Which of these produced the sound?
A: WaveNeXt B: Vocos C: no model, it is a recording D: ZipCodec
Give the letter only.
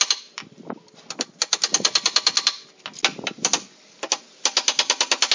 C